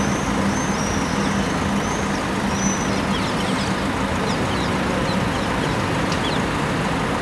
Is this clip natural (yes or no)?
yes